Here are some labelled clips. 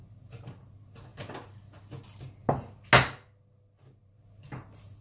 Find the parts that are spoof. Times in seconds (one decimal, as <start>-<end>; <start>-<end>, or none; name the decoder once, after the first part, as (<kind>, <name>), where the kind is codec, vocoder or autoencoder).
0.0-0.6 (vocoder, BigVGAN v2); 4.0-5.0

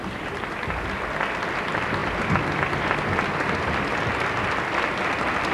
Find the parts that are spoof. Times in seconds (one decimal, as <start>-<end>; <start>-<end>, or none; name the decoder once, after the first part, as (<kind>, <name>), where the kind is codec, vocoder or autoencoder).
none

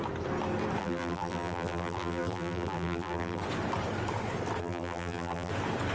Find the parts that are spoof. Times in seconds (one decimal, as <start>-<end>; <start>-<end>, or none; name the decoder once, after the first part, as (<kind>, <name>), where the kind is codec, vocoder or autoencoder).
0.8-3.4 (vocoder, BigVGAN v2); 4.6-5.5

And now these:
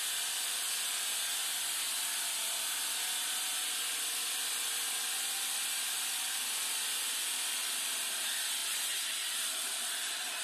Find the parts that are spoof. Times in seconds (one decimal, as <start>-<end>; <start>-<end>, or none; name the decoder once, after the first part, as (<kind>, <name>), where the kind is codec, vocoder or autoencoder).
0.0-2.7 (vocoder, BigVGAN v2); 3.8-10.4

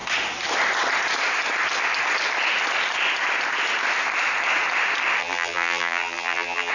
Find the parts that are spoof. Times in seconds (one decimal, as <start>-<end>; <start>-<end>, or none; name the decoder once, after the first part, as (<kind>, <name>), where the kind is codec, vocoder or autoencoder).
5.2-6.7 (vocoder, BigVGAN v2)

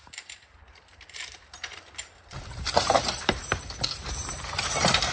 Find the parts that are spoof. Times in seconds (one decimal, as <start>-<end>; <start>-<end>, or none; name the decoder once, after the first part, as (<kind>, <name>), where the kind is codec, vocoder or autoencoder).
0.0-3.4 (vocoder, BigVGAN v2); 3.9-5.1

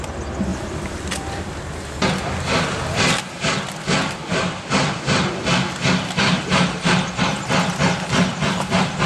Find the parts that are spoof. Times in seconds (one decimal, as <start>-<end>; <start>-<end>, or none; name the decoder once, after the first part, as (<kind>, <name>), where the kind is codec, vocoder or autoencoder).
0.5-1.6 (vocoder, BigVGAN v2); 4.3-5.0

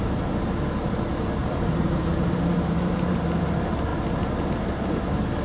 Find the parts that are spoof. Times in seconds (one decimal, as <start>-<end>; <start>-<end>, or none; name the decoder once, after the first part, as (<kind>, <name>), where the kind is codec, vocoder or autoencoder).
1.4-3.2 (vocoder, BigVGAN v2)